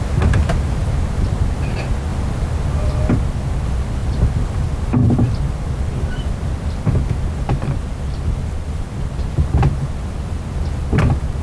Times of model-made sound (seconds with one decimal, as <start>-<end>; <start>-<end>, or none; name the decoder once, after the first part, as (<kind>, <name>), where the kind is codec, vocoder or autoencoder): 0.8-1.7 (vocoder, BigVGAN v2); 4.0-4.5; 5.0-9.2